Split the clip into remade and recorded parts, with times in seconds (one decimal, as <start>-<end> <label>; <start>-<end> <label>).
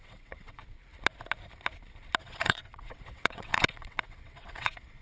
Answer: 0.0-0.6 remade; 0.6-2.2 recorded; 2.2-5.0 remade